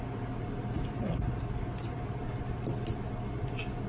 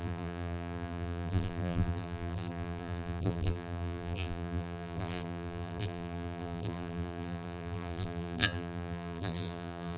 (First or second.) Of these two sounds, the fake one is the second